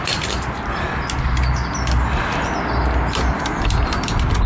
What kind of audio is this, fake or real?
real